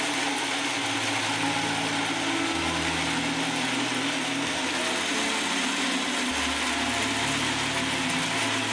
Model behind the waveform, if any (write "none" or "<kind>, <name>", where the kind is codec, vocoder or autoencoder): none